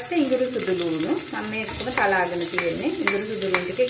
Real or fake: real